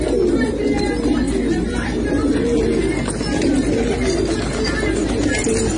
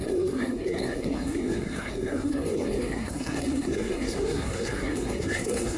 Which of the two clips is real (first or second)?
first